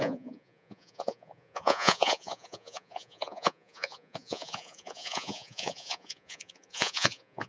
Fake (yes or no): yes